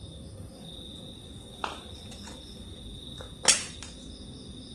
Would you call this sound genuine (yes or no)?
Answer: yes